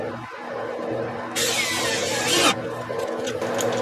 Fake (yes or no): no